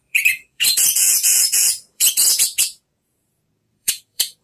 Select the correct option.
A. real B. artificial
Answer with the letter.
B